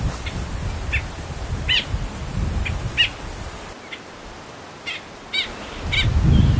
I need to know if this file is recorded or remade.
recorded